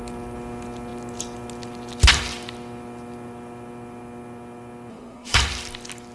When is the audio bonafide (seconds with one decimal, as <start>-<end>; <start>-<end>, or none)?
0.0-4.9; 5.4-6.1